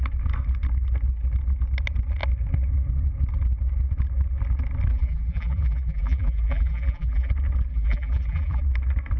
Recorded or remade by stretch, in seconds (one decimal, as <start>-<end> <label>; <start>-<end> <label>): 0.0-4.9 recorded; 4.9-7.3 remade; 7.3-7.7 recorded; 7.7-8.6 remade; 8.6-9.2 recorded